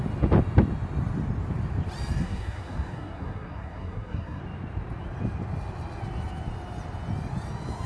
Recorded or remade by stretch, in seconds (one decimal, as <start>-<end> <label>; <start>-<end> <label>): 0.0-2.2 recorded; 2.2-4.4 remade; 4.4-7.9 recorded